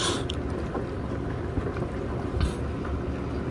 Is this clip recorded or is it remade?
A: recorded